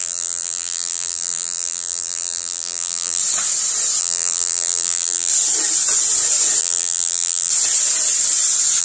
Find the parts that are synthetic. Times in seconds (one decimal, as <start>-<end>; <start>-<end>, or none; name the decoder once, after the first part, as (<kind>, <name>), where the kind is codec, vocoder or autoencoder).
0.0-3.2 (vocoder, BigVGAN v2); 4.0-5.3; 6.6-7.5